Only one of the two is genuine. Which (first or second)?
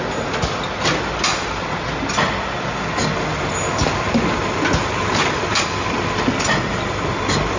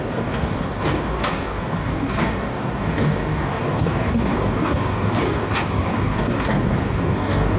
first